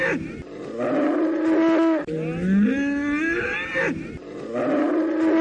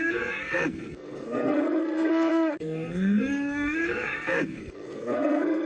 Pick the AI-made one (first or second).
second